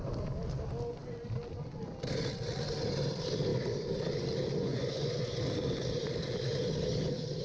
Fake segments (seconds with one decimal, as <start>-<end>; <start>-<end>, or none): 4.6-5.4